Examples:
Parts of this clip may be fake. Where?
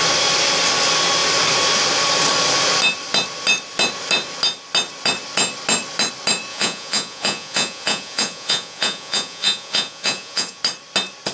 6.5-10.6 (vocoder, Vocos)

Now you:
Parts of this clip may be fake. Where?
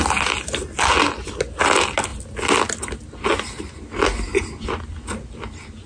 none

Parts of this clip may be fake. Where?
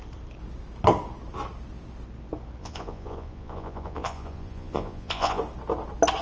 2.6-5.4 (vocoder, Vocos)